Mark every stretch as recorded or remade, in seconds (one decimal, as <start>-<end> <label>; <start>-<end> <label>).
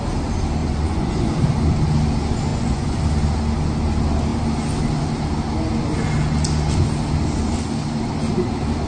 0.0-0.6 recorded; 0.6-1.3 remade; 1.3-2.5 recorded; 2.5-3.0 remade; 3.0-8.9 recorded